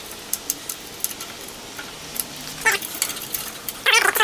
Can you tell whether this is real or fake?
real